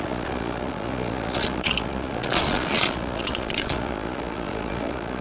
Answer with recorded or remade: remade